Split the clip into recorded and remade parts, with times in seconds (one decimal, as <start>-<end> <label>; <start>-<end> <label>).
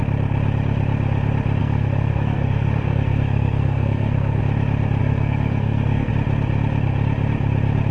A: 0.0-1.6 recorded; 1.6-4.4 remade; 4.4-5.0 recorded; 5.0-6.1 remade; 6.1-7.9 recorded